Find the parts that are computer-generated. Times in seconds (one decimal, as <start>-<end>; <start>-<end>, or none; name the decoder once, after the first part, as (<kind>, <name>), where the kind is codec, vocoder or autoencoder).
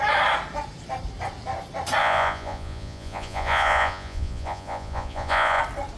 2.0-5.6 (vocoder, Vocos)